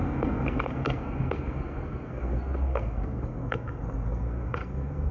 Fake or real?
fake